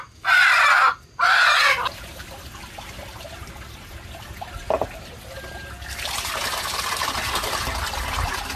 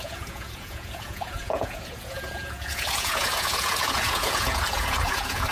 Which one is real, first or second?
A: first